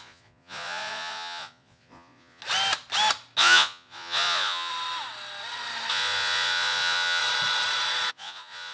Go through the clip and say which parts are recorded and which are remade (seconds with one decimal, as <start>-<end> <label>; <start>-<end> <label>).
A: 0.0-2.4 remade; 2.4-3.4 recorded; 3.4-4.7 remade; 4.7-5.9 recorded; 5.9-7.2 remade; 7.2-8.1 recorded; 8.1-8.7 remade